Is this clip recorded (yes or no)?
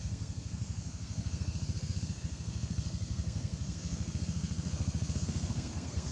no